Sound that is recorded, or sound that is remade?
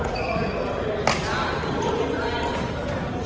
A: remade